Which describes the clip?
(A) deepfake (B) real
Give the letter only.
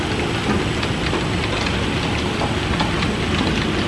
B